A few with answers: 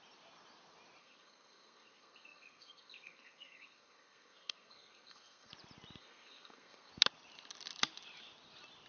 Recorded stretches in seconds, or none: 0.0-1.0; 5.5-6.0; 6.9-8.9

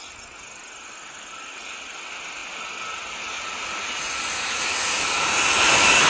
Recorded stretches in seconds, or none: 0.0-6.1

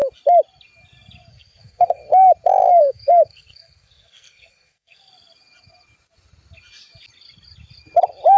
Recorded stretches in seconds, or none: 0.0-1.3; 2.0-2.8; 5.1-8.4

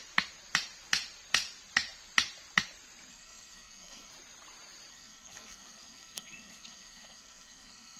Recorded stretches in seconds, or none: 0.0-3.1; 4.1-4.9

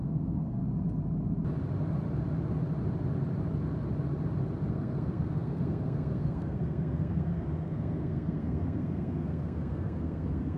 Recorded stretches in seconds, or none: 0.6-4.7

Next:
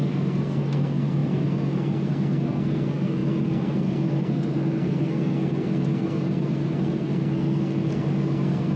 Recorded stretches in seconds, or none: none

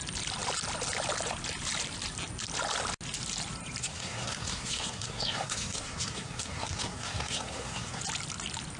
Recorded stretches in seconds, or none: 0.0-3.8; 8.0-8.8

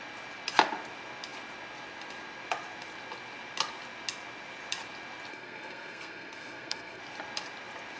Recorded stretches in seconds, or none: 0.0-5.3; 7.0-8.0